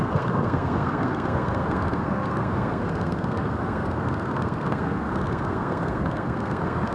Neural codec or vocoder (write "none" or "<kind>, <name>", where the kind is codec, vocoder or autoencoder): codec, SNAC